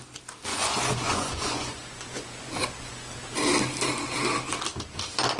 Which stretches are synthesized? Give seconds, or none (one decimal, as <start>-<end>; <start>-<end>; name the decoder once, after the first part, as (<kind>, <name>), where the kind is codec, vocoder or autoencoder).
0.5-3.1 (vocoder, Vocos)